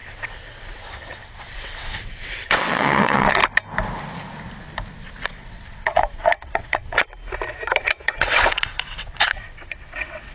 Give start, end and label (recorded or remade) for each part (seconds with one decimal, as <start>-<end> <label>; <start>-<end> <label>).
0.0-3.4 remade; 3.4-5.2 recorded; 5.2-7.1 remade; 7.1-7.8 recorded; 7.8-10.3 remade